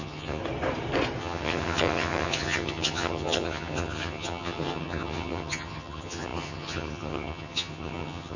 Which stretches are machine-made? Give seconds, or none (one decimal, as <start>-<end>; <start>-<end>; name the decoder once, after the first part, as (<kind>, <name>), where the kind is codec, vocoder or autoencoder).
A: 0.0-0.4 (vocoder, HiFi-GAN); 1.2-8.4